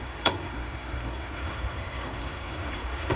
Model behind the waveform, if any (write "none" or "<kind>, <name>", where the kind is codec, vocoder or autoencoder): codec, SNAC